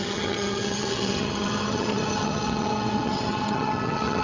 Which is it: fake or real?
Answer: fake